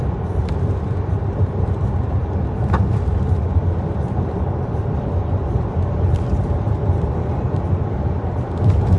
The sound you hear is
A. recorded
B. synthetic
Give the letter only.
B